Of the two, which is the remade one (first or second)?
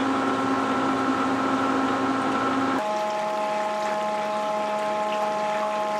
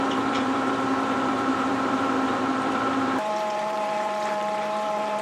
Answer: second